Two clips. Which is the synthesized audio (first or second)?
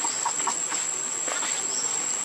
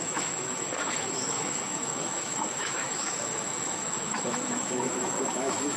second